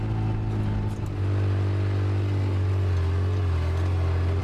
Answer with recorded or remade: recorded